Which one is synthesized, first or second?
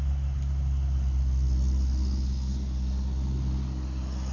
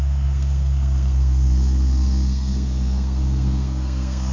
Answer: second